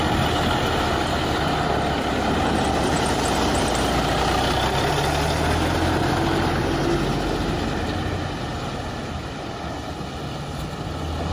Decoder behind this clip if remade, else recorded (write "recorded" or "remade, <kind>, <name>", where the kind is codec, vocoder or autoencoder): recorded